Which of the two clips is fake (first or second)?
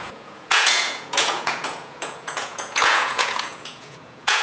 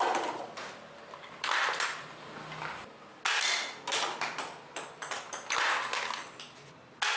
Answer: first